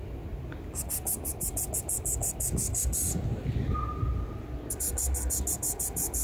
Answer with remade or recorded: recorded